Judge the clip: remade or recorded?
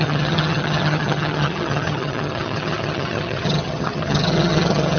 remade